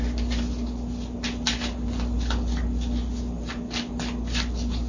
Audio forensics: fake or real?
real